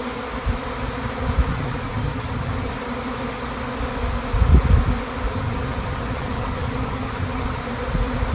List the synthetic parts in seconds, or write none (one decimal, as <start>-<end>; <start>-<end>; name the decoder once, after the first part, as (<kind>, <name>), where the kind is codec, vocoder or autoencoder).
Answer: 1.5-2.7 (vocoder, HiFi-GAN); 5.3-7.6